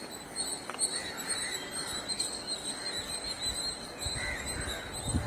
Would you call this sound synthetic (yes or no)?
no